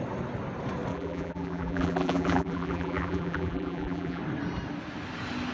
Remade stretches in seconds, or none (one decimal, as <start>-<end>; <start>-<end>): 0.9-4.2